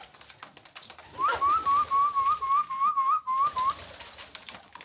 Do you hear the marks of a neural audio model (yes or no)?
no